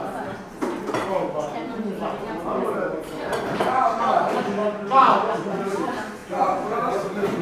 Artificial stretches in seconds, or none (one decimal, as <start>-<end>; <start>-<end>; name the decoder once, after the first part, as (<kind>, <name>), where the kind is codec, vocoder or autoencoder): 0.0-7.4 (vocoder, BigVGAN v2)

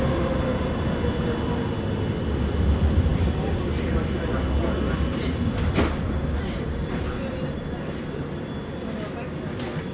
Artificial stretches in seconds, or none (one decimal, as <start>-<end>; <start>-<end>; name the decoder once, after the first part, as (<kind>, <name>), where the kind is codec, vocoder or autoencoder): none

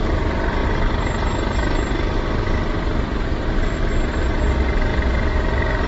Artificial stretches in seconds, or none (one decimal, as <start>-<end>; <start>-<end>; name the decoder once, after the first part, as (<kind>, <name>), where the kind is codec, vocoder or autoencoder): 4.9-5.5 (vocoder, Vocos)

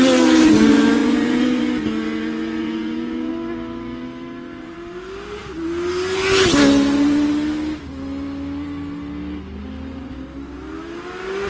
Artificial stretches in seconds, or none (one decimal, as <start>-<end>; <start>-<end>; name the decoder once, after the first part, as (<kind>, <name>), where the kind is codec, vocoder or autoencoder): 1.0-1.6 (vocoder, Vocos); 2.6-3.3

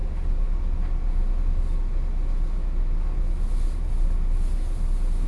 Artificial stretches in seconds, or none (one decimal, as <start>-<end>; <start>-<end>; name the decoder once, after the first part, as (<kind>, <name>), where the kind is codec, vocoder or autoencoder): none

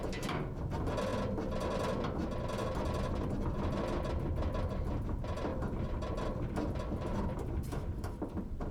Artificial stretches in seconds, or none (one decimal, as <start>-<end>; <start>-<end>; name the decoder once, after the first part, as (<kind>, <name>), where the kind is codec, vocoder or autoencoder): 5.5-6.1 (vocoder, BigVGAN v2); 7.1-8.7